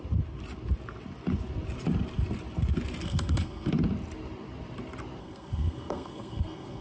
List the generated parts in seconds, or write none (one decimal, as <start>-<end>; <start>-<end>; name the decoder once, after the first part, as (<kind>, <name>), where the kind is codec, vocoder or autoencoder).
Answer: 3.0-3.7 (codec, SNAC); 5.2-6.8